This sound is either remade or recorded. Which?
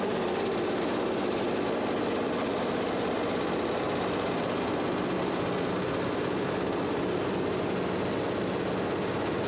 recorded